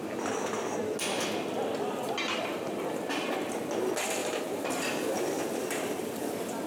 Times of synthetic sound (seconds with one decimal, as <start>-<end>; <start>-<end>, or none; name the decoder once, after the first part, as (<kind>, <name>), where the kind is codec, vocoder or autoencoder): 4.2-4.7 (vocoder, BigVGAN v2)